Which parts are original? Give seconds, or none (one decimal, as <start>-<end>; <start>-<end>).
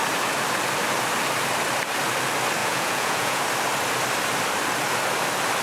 0.0-2.6; 3.4-5.6